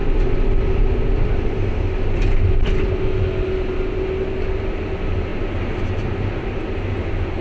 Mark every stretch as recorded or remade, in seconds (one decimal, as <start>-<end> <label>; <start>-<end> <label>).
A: 0.0-7.4 recorded